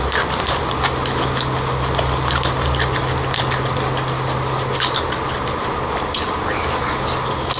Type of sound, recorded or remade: recorded